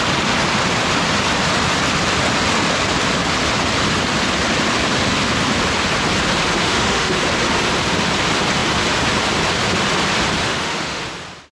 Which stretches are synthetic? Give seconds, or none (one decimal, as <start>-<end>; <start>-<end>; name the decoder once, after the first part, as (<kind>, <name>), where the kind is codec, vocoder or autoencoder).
6.6-7.1 (autoencoder, DAC-VAE); 10.4-11.0